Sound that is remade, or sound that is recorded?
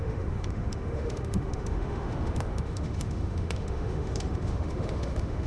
remade